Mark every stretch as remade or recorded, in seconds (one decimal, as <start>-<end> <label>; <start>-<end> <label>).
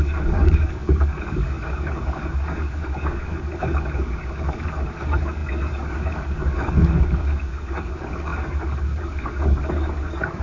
0.0-10.4 remade